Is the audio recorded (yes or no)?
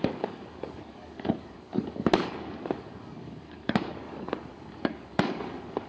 no